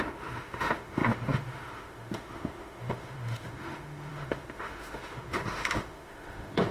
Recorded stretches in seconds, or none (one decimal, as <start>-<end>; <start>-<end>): none